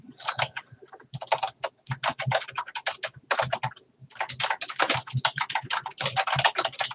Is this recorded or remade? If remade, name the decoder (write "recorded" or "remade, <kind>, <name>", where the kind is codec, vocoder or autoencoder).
recorded